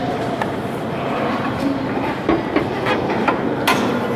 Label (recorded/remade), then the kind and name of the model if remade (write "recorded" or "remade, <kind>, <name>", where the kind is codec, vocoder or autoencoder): recorded